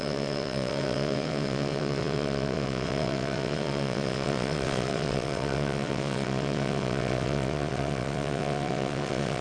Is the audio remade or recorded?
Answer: remade